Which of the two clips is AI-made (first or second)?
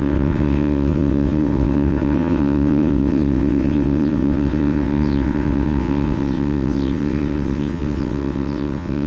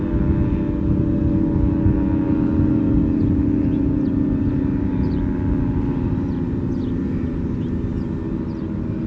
first